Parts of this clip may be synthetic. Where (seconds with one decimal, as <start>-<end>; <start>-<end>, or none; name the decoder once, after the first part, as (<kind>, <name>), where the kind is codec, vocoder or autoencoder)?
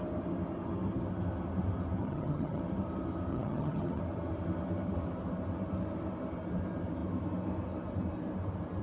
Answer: 2.0-2.6 (vocoder, HiFi-GAN); 3.3-4.0